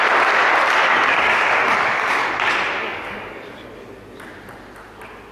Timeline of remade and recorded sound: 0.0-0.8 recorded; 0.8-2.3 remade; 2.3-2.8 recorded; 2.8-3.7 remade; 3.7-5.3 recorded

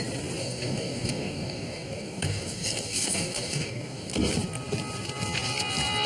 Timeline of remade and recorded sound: 0.0-0.4 recorded; 0.4-4.1 remade; 4.1-6.1 recorded

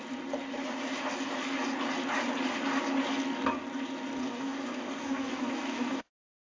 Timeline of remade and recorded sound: 0.0-4.2 recorded; 4.2-6.0 remade; 6.0-6.4 recorded

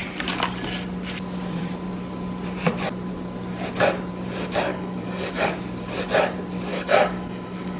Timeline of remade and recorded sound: 0.0-4.7 recorded; 4.7-5.5 remade; 5.5-6.7 recorded; 6.7-7.8 remade

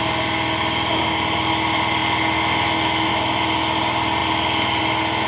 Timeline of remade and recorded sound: 0.0-5.3 recorded

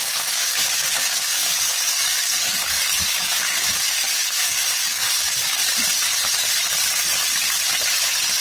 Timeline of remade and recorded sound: 0.0-5.6 remade; 5.6-8.4 recorded

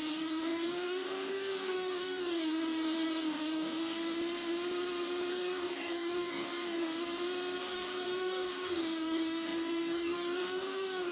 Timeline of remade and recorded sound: 0.0-4.0 remade; 4.0-5.3 recorded; 5.3-6.9 remade; 6.9-7.6 recorded; 7.6-11.1 remade